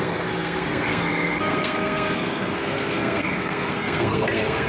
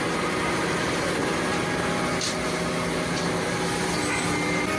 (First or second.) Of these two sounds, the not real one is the first